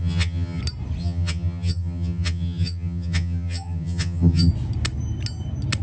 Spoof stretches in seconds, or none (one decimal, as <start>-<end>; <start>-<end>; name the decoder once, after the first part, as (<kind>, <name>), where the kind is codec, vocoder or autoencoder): 0.0-0.6 (vocoder, HiFi-GAN); 1.0-4.5